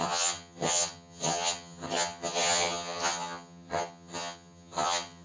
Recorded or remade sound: remade